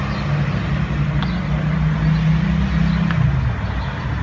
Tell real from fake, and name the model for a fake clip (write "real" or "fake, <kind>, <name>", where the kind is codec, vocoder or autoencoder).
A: real